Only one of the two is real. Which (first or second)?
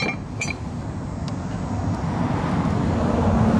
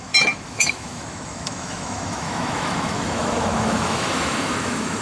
first